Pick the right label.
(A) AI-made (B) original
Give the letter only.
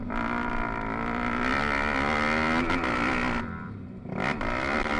B